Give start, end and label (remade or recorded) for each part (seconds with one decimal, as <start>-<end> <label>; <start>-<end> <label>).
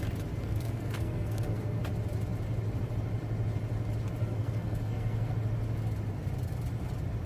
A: 0.0-0.4 recorded; 0.4-1.8 remade; 1.8-4.2 recorded; 4.2-5.3 remade; 5.3-7.3 recorded